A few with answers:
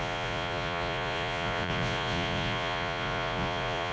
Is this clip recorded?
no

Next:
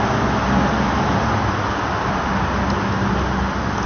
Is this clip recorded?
yes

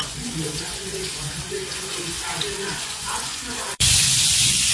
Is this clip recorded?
no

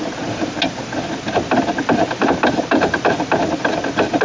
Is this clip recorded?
yes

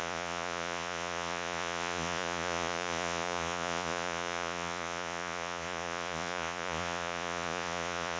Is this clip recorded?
no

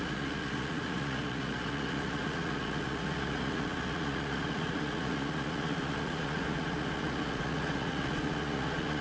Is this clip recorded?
no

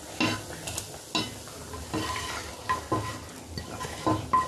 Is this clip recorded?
yes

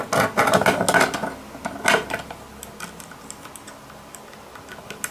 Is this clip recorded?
yes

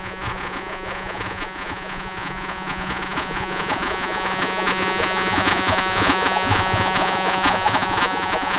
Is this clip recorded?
no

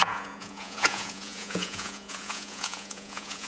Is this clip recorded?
no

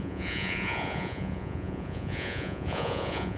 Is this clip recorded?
no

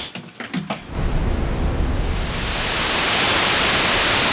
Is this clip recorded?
yes